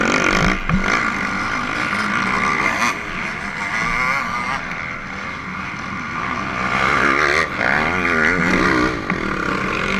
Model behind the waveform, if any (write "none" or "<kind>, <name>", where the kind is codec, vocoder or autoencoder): none